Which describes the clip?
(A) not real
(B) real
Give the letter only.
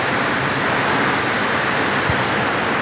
B